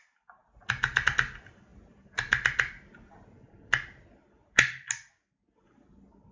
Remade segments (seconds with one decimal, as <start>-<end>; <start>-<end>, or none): none